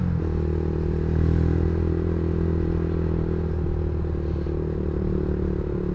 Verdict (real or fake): real